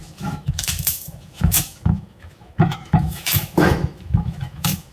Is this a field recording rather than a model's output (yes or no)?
no